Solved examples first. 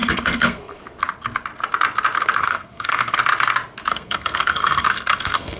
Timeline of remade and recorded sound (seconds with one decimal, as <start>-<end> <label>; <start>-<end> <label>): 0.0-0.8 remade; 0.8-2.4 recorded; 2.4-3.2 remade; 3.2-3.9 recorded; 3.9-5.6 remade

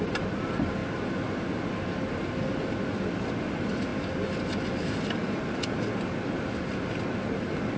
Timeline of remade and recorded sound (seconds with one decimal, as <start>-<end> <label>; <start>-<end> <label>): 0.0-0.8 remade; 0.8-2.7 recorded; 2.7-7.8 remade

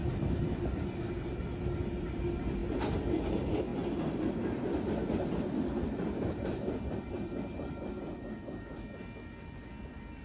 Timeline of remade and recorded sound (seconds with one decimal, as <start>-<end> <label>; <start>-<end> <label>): 0.0-1.2 remade; 1.2-3.7 recorded; 3.7-7.9 remade; 7.9-10.2 recorded

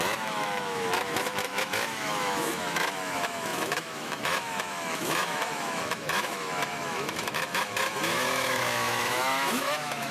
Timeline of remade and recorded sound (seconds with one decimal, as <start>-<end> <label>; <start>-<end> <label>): 0.0-10.1 remade

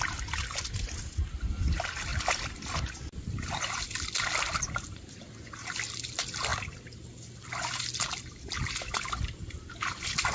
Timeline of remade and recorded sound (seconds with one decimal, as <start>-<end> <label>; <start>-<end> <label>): 0.0-10.3 recorded

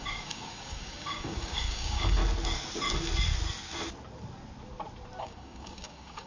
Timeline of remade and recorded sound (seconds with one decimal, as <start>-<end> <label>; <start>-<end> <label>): 0.0-2.2 remade; 2.2-5.2 recorded; 5.2-6.3 remade

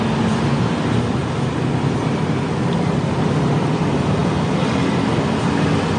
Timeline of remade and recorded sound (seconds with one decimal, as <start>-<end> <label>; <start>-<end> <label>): 0.0-6.0 recorded

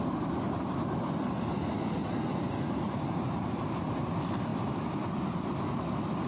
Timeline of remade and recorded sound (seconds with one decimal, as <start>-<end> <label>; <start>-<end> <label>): 0.0-2.0 recorded; 2.0-3.8 remade; 3.8-6.3 recorded